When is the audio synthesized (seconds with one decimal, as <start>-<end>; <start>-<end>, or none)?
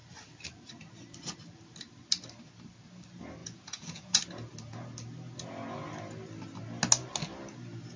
3.4-4.2